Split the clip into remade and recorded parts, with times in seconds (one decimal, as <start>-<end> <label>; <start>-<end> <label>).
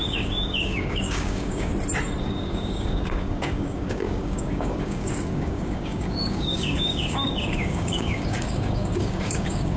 0.0-1.7 remade; 1.7-2.2 recorded; 2.2-9.8 remade